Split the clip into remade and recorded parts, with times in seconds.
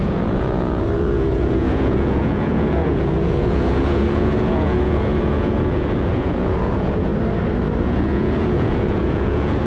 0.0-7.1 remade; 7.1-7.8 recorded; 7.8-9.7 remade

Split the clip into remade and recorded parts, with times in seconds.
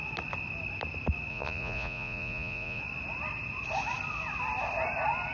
0.0-1.3 recorded; 1.3-2.8 remade; 2.8-5.3 recorded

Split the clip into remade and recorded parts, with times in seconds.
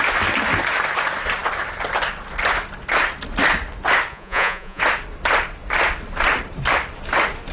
0.0-4.1 recorded; 4.1-4.8 remade; 4.8-7.5 recorded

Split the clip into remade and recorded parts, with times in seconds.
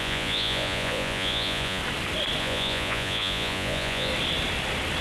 0.0-1.8 remade; 1.8-2.4 recorded; 2.4-4.1 remade; 4.1-5.0 recorded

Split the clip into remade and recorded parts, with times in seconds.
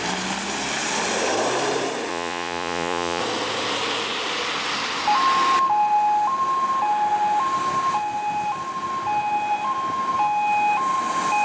0.0-2.1 recorded; 2.1-3.2 remade; 3.2-11.4 recorded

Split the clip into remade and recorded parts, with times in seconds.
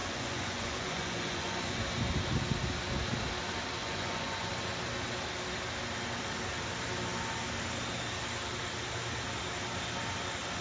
0.0-1.8 remade; 1.8-3.8 recorded; 3.8-4.5 remade; 4.5-10.6 recorded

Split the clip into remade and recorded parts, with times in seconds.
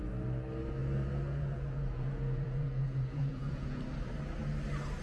0.0-0.8 recorded; 0.8-3.8 remade; 3.8-5.0 recorded